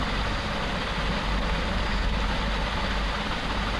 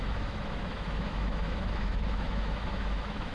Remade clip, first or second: second